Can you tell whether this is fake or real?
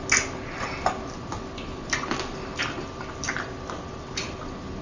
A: real